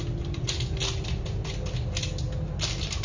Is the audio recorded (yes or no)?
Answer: yes